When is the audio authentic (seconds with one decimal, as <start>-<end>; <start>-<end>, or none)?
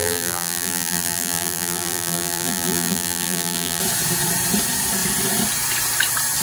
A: 3.8-6.4